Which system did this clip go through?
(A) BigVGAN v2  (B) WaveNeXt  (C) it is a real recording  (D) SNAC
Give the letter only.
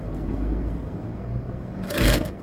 D